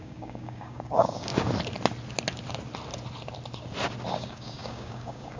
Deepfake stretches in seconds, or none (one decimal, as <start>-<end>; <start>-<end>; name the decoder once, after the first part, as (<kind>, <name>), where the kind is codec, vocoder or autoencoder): 0.0-1.3 (codec, DAC); 4.1-5.4